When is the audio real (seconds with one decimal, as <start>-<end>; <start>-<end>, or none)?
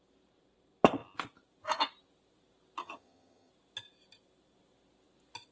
0.0-2.8; 3.5-5.5